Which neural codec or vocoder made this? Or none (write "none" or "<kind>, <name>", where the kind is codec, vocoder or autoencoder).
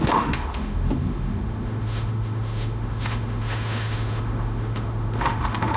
autoencoder, DAC-VAE